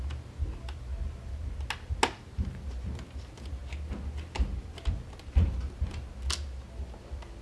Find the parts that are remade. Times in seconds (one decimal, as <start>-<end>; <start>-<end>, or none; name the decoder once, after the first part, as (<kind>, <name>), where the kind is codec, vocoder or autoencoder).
none